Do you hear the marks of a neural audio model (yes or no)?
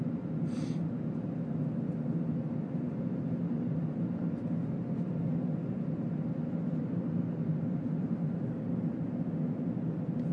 no